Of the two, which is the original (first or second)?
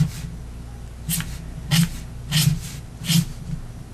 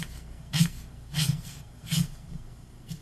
first